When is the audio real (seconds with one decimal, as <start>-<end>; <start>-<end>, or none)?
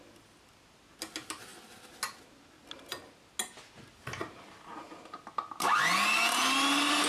0.0-7.1